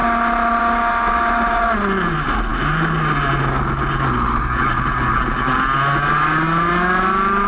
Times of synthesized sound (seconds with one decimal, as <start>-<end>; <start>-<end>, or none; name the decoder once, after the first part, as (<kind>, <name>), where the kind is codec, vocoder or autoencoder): none